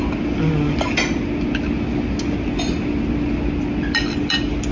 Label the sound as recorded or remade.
recorded